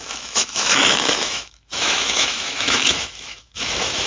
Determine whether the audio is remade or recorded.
remade